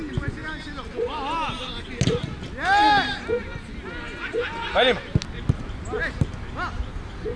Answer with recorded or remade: recorded